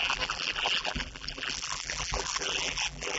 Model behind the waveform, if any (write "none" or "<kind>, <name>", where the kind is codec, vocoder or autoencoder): vocoder, BigVGAN v2